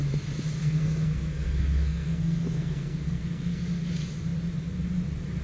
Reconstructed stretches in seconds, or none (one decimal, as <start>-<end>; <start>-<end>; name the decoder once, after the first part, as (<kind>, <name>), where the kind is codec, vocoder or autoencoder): 0.6-3.8 (codec, SNAC)